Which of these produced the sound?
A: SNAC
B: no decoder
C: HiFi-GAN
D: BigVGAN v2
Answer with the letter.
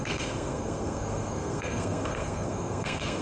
A